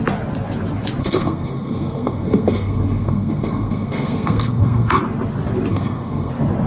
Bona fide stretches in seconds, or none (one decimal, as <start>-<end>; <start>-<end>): 0.0-1.0; 5.0-5.7; 6.3-6.7